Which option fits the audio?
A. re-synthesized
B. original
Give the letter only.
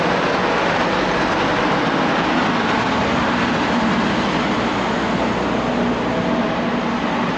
B